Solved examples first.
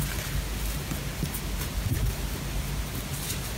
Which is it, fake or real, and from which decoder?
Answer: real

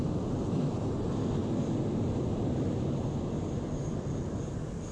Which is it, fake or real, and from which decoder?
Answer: real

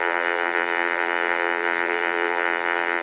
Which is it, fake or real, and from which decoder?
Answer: fake, vocoder, BigVGAN v2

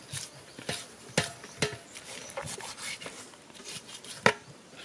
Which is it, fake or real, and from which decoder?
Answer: real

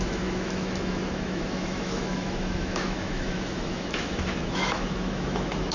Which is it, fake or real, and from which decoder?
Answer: fake, autoencoder, DAC-VAE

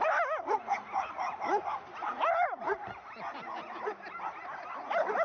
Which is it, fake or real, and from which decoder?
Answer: real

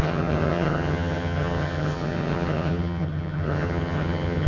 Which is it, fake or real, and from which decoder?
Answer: fake, vocoder, HiFi-GAN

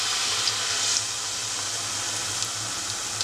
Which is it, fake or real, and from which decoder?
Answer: real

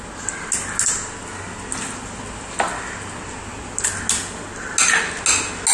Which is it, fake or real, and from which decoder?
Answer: real